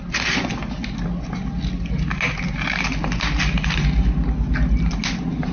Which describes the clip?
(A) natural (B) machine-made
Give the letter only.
A